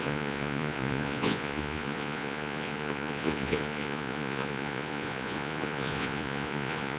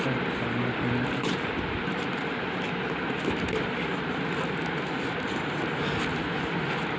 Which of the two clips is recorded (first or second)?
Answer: second